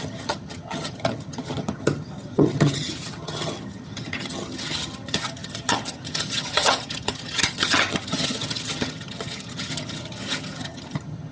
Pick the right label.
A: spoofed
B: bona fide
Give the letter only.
A